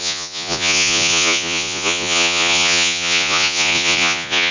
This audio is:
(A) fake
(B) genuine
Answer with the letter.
A